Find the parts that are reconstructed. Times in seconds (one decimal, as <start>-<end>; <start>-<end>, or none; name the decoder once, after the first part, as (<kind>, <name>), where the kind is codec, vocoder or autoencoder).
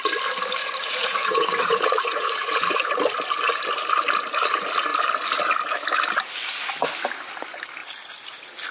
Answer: 0.6-2.9 (vocoder, Vocos)